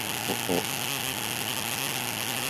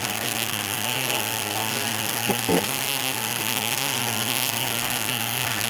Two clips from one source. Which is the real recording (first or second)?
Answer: first